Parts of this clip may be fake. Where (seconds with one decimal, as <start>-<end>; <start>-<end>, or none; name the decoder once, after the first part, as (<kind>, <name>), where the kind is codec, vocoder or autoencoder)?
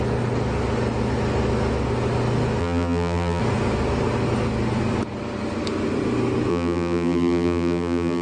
2.6-3.4 (vocoder, BigVGAN v2); 6.5-8.2